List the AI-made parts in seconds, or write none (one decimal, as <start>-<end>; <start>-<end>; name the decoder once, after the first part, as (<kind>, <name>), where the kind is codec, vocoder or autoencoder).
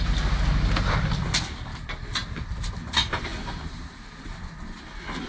none